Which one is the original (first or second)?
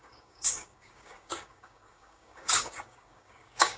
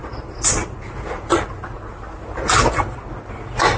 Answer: second